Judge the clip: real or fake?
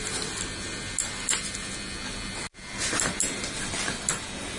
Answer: real